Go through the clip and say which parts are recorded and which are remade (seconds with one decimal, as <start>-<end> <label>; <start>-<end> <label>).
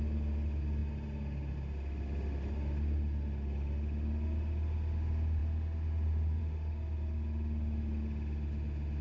0.0-9.0 recorded